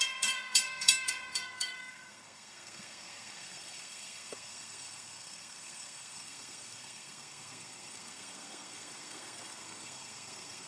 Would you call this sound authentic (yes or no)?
no